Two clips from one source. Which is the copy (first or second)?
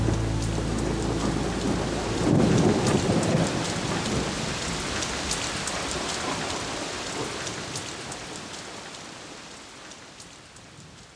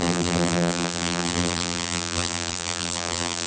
second